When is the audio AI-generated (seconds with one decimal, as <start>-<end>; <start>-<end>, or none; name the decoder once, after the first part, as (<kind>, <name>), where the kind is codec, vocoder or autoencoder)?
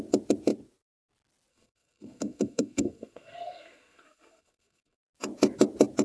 1.5-5.1 (codec, SNAC)